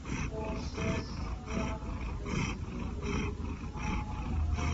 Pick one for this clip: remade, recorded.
recorded